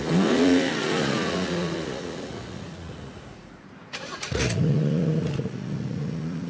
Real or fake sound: fake